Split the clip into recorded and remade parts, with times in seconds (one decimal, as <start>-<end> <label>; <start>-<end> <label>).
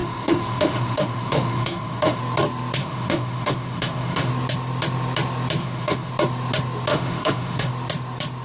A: 0.0-2.2 remade; 2.2-2.8 recorded; 2.8-4.3 remade; 4.3-5.6 recorded; 5.6-6.1 remade; 6.1-6.9 recorded; 6.9-7.7 remade; 7.7-8.4 recorded